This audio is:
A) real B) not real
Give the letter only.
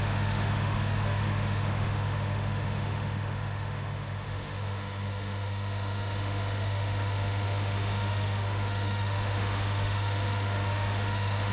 B